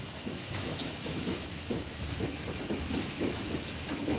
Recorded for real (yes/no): no